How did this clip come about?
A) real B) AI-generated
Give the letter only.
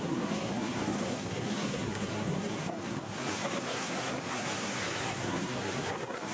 B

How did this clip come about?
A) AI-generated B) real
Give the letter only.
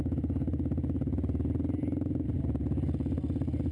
B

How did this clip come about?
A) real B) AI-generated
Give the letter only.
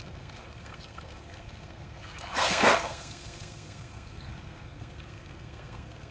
B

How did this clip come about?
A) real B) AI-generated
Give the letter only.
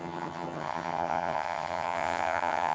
B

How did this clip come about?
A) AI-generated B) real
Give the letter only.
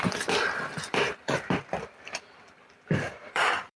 A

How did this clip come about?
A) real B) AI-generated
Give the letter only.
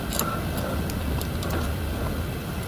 A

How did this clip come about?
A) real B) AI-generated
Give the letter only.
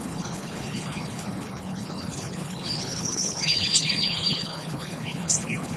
B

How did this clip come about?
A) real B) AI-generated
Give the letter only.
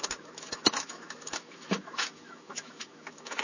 B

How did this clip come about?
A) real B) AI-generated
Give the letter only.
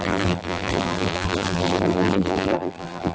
B